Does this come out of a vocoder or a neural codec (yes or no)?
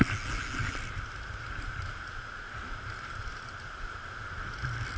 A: no